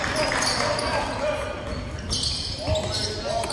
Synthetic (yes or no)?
no